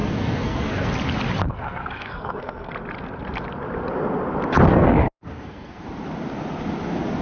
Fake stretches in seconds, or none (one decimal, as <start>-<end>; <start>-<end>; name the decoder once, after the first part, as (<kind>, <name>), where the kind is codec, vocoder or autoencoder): 0.0-0.9 (codec, SNAC); 1.4-2.7; 4.7-5.8